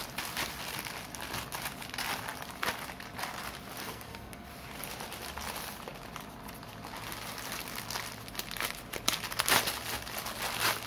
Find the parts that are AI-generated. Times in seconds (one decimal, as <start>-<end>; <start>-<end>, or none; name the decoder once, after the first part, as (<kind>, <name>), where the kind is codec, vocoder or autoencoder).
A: 3.8-4.5 (codec, SNAC)